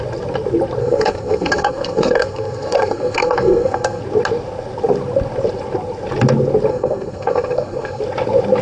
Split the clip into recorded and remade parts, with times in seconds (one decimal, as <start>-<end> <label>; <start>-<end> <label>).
0.0-0.8 recorded; 0.8-4.0 remade; 4.0-6.7 recorded; 6.7-8.0 remade; 8.0-8.6 recorded